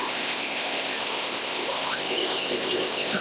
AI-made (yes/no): yes